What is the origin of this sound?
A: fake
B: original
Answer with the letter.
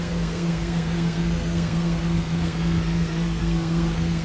A